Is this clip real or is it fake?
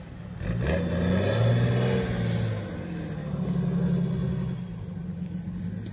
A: real